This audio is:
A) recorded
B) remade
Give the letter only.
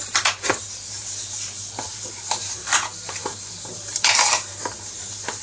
B